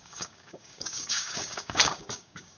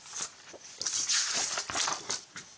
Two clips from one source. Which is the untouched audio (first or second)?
second